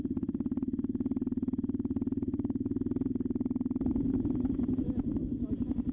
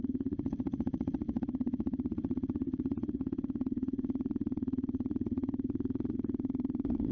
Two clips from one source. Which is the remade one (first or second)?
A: second